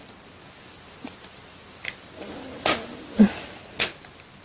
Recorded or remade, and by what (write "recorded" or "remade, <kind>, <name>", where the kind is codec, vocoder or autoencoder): recorded